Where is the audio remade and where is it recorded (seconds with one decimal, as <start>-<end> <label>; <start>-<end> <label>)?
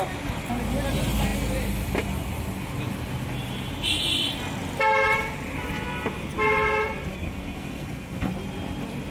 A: 0.0-7.1 recorded; 7.1-8.3 remade; 8.3-9.1 recorded